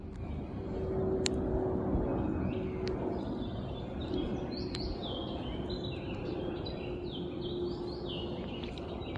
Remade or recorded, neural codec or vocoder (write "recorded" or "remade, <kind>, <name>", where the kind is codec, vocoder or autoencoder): recorded